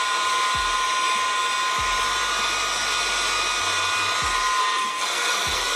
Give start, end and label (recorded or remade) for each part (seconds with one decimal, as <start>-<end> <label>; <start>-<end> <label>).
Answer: 0.0-4.6 recorded; 4.6-5.8 remade